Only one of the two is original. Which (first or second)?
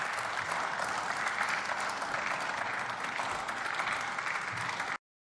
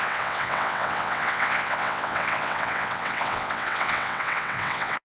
first